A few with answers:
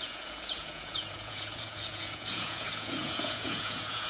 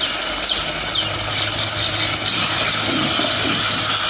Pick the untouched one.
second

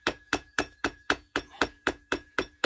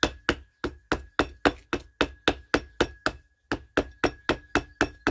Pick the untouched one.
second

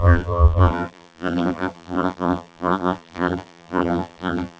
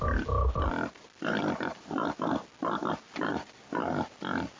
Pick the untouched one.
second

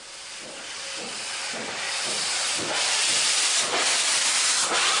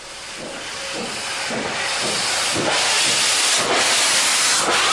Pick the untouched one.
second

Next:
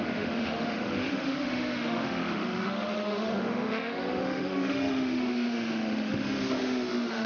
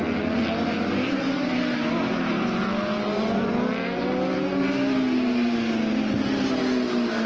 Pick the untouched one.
second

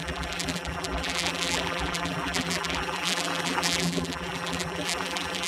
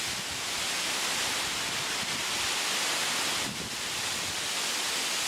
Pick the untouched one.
second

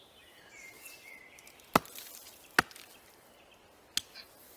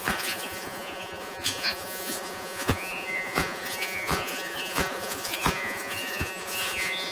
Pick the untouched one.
first